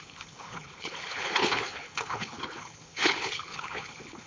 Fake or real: fake